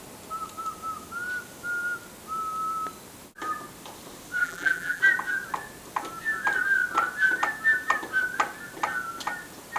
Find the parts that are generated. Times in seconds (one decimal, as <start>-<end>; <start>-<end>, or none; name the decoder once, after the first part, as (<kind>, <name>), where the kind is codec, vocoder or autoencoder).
4.4-5.0 (vocoder, BigVGAN v2)